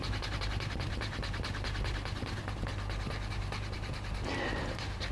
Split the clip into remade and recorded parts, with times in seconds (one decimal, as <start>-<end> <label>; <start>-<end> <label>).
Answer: 0.0-2.7 remade; 2.7-3.3 recorded; 3.3-5.1 remade